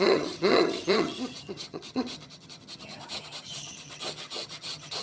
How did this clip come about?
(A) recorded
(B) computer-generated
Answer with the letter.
B